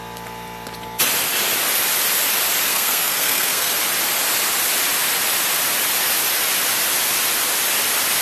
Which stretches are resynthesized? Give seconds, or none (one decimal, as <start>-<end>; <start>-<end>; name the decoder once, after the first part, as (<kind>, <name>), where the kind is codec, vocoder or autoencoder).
2.7-3.7 (codec, SNAC)